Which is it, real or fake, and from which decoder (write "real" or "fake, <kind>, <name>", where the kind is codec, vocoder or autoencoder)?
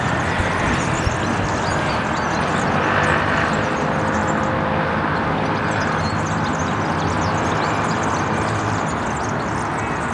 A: real